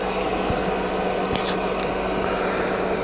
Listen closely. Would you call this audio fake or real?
real